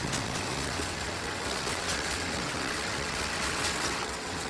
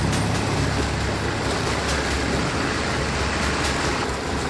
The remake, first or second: first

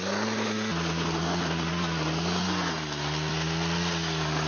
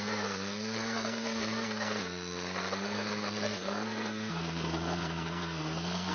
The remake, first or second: second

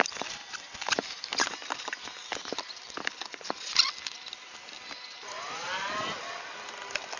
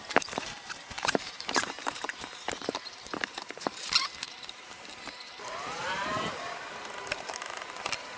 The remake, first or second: second